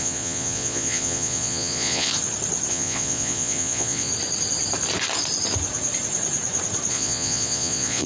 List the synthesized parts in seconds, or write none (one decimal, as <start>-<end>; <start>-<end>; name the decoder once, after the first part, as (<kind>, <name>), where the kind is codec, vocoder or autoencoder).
0.0-2.1 (vocoder, Vocos); 2.7-4.1; 6.9-8.1